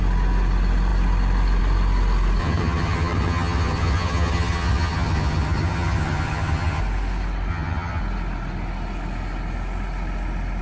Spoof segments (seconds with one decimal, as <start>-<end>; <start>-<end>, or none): 2.4-6.8; 7.5-8.0